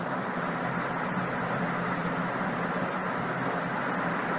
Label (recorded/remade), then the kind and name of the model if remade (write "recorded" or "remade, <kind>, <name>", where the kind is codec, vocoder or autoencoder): recorded